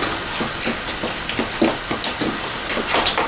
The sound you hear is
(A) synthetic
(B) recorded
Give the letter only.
B